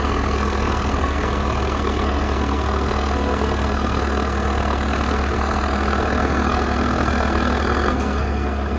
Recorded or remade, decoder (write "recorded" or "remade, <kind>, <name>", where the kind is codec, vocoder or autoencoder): remade, codec, SNAC